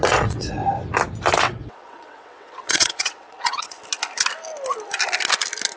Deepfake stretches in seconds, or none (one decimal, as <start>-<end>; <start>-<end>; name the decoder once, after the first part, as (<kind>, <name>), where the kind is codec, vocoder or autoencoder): 0.0-0.6 (vocoder, WaveNeXt); 1.4-3.8